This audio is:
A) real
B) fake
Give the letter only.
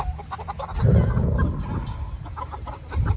A